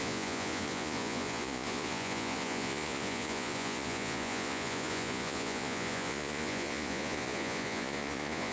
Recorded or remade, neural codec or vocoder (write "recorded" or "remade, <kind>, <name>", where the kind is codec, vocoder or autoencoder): remade, vocoder, Vocos